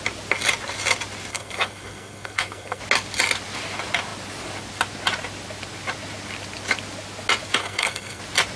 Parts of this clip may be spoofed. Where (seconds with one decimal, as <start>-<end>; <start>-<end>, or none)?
1.3-2.8; 7.6-8.2